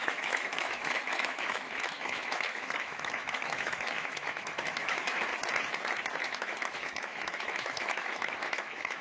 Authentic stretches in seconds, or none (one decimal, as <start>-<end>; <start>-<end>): 5.3-6.2